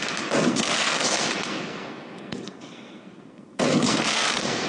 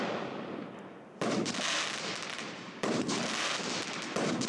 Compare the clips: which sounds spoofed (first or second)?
first